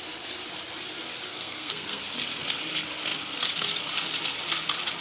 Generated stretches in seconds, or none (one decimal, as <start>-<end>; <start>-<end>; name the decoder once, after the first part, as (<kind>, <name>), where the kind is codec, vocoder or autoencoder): 1.3-2.0 (codec, SNAC)

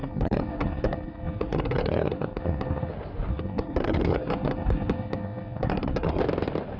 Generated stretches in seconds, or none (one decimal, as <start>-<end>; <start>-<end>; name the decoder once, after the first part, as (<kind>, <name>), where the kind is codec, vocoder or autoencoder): 0.0-2.9 (codec, SNAC); 3.3-6.2

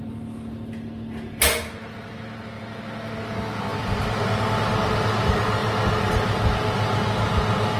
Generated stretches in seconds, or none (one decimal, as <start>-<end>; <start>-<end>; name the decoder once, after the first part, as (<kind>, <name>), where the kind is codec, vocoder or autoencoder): none

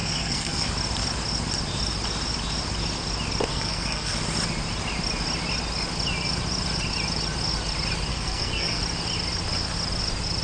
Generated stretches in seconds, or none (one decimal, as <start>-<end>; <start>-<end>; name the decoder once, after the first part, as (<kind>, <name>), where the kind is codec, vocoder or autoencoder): 0.0-0.7 (codec, SNAC); 3.5-4.2; 8.1-8.8

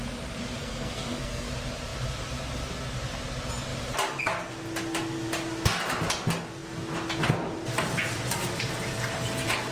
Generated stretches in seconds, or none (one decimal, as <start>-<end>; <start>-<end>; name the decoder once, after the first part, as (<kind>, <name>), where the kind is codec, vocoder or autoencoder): 0.6-1.5 (codec, SNAC)